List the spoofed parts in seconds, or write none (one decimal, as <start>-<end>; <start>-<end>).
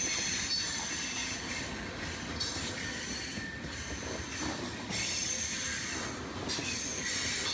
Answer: none